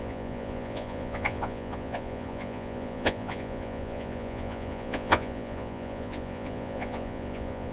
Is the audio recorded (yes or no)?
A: no